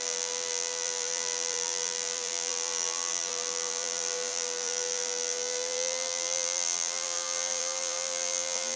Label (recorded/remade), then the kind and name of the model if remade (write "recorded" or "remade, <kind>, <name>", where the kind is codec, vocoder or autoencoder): remade, vocoder, BigVGAN v2